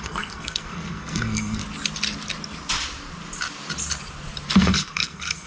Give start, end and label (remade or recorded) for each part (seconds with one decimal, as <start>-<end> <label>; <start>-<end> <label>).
0.0-1.6 remade; 1.6-4.6 recorded; 4.6-5.5 remade